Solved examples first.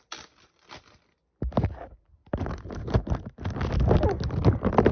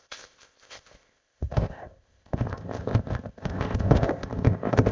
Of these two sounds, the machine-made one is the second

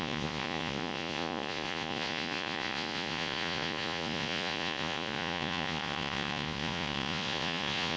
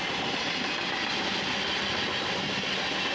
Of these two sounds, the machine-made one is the first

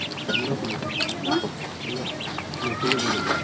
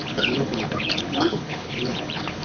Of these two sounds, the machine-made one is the second